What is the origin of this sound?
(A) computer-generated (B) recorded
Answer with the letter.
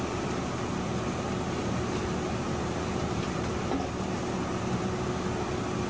B